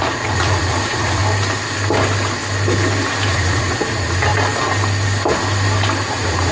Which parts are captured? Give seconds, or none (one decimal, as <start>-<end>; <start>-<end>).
1.2-3.3; 4.3-6.1